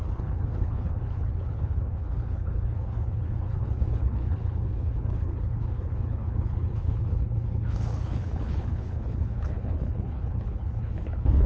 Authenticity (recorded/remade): remade